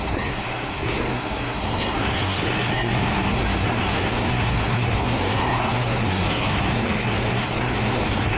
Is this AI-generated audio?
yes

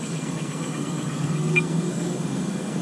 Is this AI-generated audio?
yes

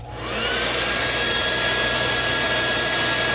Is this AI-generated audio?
no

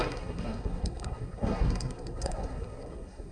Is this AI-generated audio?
yes